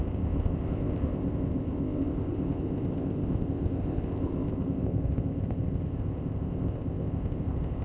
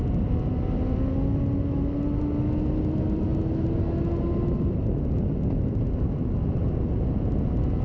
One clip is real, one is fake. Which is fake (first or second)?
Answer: first